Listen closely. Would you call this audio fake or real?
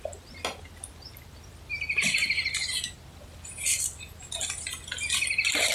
real